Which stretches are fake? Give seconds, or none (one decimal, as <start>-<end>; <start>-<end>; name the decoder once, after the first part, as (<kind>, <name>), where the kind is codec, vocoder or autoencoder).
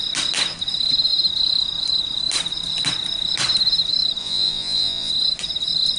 4.2-5.1 (vocoder, Vocos)